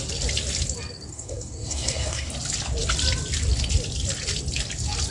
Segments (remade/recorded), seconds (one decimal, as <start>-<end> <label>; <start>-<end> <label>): 0.0-1.1 recorded; 1.1-2.3 remade; 2.3-5.1 recorded